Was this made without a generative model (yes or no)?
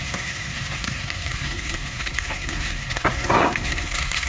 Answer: no